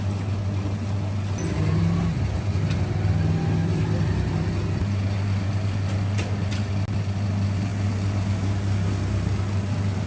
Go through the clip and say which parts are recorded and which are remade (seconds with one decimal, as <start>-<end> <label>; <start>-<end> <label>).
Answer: 0.0-10.1 recorded